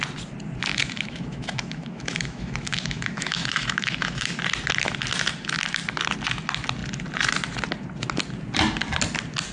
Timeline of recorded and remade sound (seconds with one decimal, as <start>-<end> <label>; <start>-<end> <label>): 0.0-0.7 recorded; 0.7-4.4 remade; 4.4-9.5 recorded